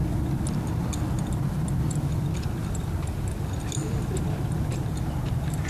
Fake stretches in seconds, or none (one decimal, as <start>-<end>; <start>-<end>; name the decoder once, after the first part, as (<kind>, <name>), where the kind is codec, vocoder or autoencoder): none